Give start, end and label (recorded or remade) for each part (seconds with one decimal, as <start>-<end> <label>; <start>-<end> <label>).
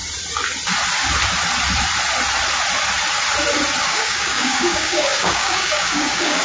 0.0-3.8 recorded; 3.8-6.4 remade